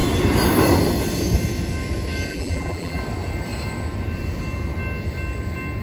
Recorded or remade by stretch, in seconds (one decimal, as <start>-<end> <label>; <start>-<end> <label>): 0.0-2.3 recorded; 2.3-3.0 remade; 3.0-5.8 recorded